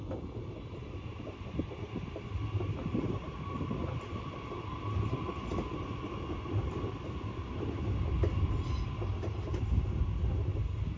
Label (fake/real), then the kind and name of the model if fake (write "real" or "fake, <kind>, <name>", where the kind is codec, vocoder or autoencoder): real